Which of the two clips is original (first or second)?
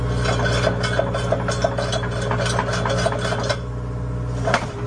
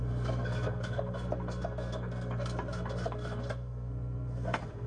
first